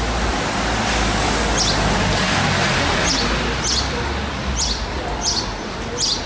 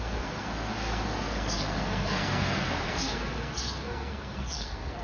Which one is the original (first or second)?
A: first